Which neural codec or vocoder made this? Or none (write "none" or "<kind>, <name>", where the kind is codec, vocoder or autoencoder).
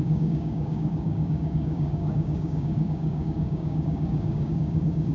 codec, DAC